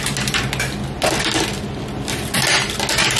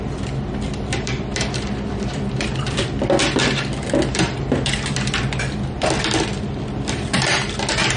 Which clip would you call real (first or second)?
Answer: first